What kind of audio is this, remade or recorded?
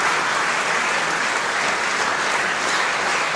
recorded